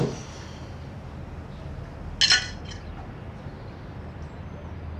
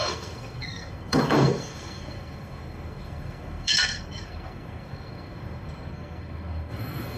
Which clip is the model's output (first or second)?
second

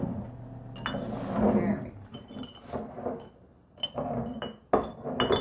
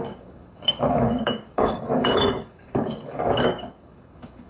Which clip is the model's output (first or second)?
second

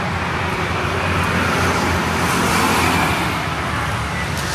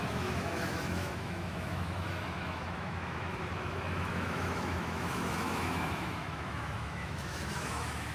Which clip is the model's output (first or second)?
second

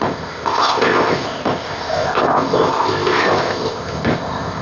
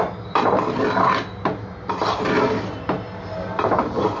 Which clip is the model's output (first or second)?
first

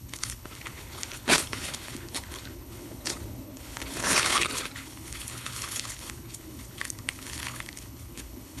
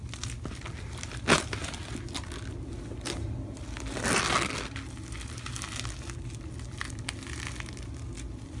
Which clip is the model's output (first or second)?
first